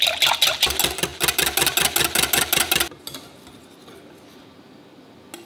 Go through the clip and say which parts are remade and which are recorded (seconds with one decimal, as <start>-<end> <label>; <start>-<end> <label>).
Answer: 0.0-5.5 recorded